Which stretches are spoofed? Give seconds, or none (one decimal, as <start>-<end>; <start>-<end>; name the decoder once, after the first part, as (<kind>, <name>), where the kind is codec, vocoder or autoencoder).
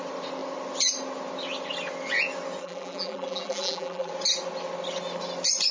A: 2.6-4.1 (vocoder, BigVGAN v2)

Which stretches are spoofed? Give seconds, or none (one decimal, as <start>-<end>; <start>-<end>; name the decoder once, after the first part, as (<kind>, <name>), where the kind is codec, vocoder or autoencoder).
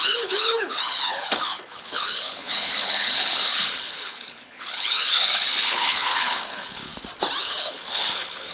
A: 0.0-6.9 (codec, HILCodec); 7.4-8.5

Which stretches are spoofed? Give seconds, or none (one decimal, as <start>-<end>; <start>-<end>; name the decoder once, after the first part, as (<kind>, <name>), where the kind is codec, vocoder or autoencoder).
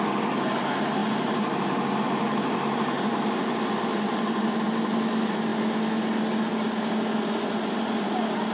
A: none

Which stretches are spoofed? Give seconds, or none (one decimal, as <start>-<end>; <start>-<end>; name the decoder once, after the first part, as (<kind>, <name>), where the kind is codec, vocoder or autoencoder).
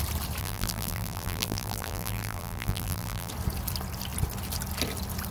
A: 0.4-3.3 (vocoder, BigVGAN v2)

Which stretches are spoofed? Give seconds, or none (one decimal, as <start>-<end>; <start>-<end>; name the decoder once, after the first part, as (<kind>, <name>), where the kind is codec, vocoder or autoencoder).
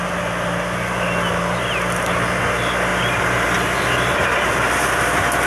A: none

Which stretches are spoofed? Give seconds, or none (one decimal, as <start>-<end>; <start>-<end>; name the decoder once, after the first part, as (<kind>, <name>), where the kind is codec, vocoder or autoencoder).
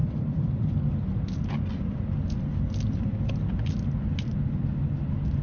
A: 0.0-0.7 (vocoder, BigVGAN v2)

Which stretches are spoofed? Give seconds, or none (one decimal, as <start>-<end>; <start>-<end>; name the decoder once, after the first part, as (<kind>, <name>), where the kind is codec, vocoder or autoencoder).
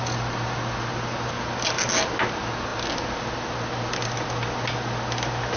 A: none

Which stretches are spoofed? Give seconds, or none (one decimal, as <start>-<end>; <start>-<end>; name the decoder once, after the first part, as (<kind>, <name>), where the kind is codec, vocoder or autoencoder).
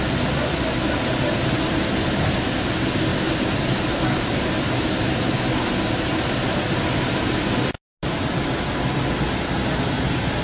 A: none